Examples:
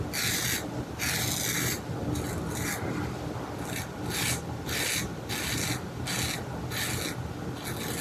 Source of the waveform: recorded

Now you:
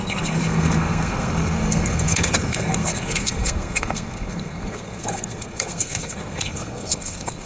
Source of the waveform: remade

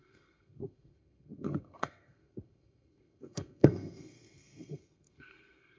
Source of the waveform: remade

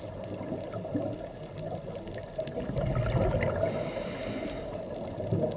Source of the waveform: recorded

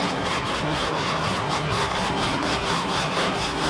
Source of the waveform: remade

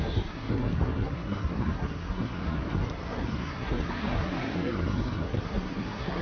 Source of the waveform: remade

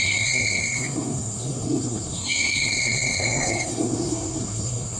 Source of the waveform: remade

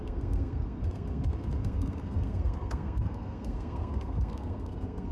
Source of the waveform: remade